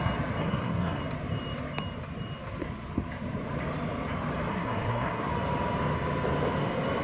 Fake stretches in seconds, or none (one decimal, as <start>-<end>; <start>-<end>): 0.4-1.0; 4.5-5.3